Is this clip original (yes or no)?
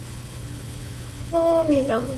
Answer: no